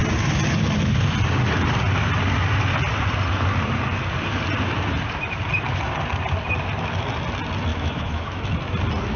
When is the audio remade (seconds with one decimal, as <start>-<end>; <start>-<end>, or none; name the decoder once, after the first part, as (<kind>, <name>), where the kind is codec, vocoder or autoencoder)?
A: 7.7-8.4 (autoencoder, DAC-VAE)